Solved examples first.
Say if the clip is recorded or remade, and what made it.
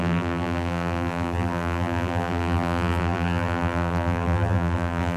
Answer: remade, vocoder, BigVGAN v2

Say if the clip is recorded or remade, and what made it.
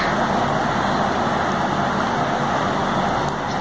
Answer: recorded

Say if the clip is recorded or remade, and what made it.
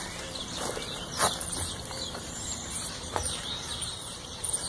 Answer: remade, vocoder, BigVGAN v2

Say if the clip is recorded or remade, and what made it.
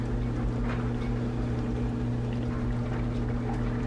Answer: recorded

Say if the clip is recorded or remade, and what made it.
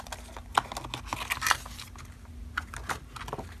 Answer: recorded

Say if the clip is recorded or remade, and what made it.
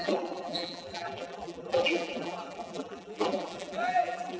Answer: remade, vocoder, BigVGAN v2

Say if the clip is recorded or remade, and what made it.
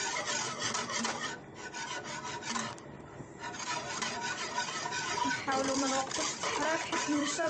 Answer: remade, vocoder, BigVGAN v2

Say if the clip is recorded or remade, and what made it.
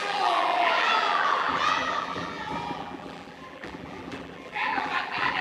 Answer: remade, vocoder, BigVGAN v2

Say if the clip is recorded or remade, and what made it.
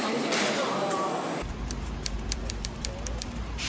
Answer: remade, vocoder, BigVGAN v2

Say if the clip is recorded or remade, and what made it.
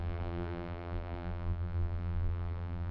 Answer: remade, vocoder, BigVGAN v2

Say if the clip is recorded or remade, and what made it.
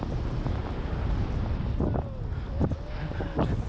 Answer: recorded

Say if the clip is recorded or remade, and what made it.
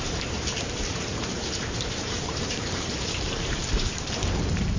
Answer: remade, vocoder, BigVGAN v2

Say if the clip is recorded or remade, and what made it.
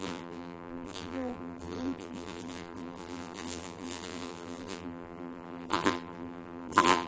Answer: remade, vocoder, BigVGAN v2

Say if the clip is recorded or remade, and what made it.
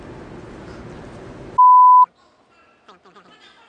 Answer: recorded